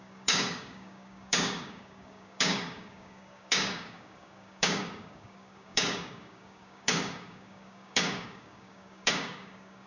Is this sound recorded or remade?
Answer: remade